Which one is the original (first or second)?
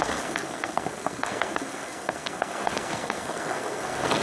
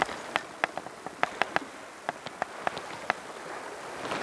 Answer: second